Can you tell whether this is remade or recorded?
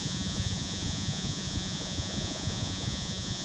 remade